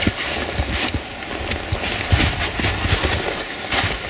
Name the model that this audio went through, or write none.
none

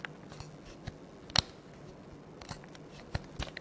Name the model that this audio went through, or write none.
none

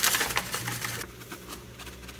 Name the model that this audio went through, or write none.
none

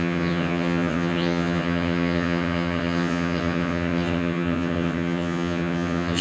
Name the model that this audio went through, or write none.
vocoder, HiFi-GAN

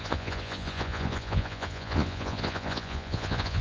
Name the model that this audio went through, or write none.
vocoder, Vocos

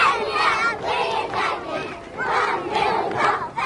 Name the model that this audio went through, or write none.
none